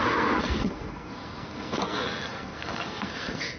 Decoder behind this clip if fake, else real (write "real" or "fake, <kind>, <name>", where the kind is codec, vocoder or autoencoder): fake, codec, SNAC